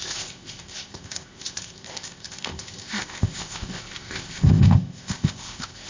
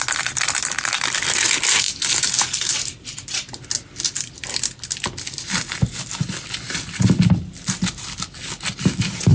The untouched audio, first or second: second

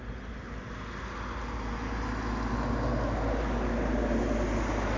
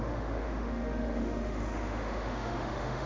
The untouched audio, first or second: first